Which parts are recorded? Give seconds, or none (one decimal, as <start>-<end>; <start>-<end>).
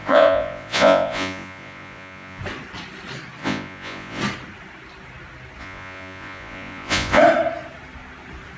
2.4-3.4; 4.2-5.6; 7.2-8.6